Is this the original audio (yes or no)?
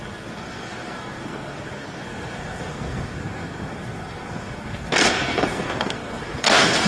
no